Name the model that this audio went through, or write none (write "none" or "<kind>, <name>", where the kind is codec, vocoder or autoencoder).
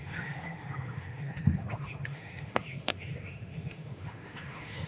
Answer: autoencoder, DAC-VAE